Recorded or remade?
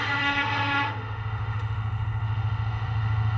remade